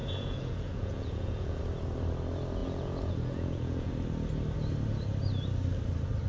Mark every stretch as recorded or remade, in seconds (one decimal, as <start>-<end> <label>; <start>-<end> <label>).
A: 0.0-1.6 remade; 1.6-2.6 recorded; 2.6-3.9 remade; 3.9-6.3 recorded